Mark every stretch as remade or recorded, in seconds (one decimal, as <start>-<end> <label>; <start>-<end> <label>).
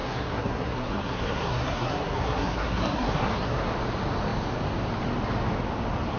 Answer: 0.0-3.7 remade; 3.7-6.2 recorded